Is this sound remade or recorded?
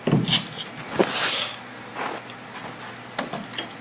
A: recorded